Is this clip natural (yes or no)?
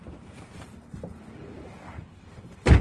no